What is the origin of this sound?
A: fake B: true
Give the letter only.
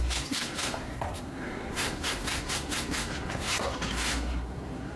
A